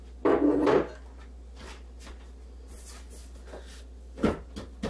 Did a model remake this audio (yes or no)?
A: no